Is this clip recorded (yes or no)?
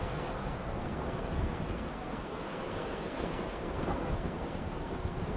no